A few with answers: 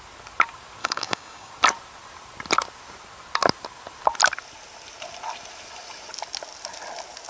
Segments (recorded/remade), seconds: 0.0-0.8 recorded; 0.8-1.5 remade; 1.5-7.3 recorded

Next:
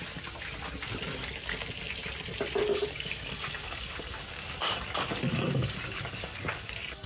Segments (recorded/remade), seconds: 0.0-2.7 recorded; 2.7-7.1 remade

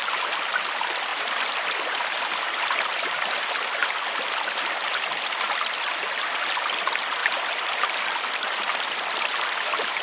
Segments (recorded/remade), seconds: 0.0-10.0 recorded

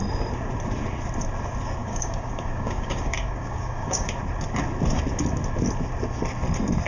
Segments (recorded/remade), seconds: 0.0-1.8 recorded; 1.8-4.1 remade; 4.1-6.9 recorded

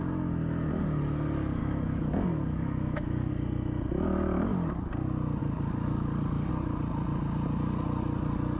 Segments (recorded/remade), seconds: 0.0-1.6 recorded; 1.6-3.3 remade; 3.3-5.4 recorded; 5.4-6.5 remade; 6.5-8.6 recorded

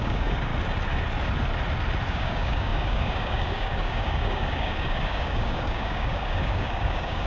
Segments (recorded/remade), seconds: 0.0-0.5 remade; 0.5-2.1 recorded; 2.1-7.3 remade

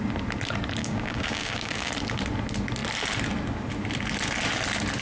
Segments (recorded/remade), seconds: 0.0-0.8 recorded; 0.8-1.9 remade; 1.9-5.0 recorded